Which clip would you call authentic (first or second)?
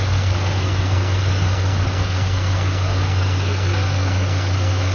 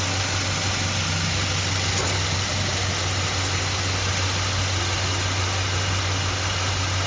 second